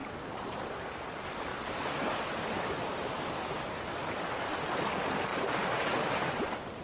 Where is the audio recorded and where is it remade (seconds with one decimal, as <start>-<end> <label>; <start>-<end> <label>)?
0.0-0.7 remade; 0.7-1.5 recorded; 1.5-2.4 remade; 2.4-5.3 recorded; 5.3-5.8 remade; 5.8-6.8 recorded